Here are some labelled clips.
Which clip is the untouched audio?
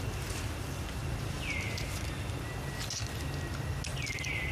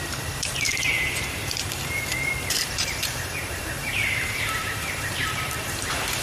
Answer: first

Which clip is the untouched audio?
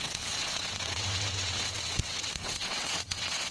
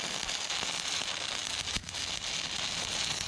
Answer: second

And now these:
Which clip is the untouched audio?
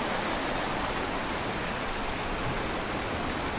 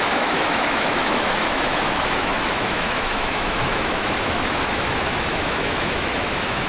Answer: first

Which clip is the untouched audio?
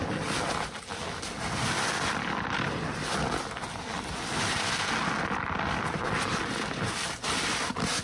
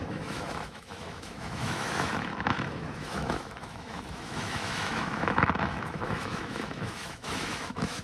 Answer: first